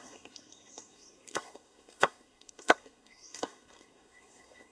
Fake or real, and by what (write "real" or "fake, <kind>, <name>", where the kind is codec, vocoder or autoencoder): fake, codec, SNAC